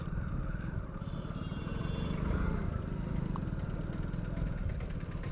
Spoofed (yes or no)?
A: no